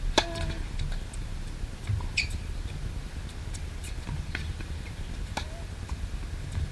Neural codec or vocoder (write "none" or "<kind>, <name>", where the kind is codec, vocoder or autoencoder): none